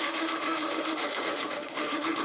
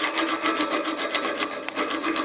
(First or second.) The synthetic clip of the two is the first